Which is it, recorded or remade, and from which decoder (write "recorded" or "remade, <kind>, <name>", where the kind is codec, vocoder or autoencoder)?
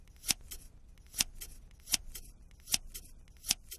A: recorded